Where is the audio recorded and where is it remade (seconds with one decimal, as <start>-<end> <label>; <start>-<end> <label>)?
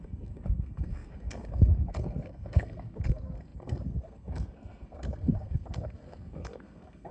0.0-7.1 remade